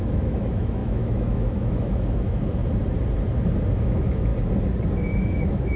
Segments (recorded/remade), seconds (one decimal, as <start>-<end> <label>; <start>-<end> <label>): 0.0-2.6 remade; 2.6-3.8 recorded; 3.8-4.3 remade; 4.3-4.9 recorded; 4.9-5.8 remade